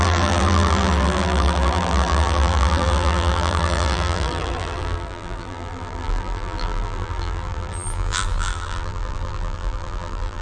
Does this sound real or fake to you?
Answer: fake